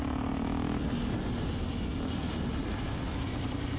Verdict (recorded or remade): recorded